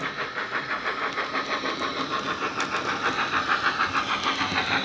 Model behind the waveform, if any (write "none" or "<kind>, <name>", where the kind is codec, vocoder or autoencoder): none